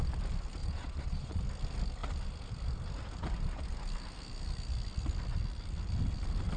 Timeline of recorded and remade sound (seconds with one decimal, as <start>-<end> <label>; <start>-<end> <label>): 0.0-0.6 recorded; 0.6-1.4 remade; 1.4-6.6 recorded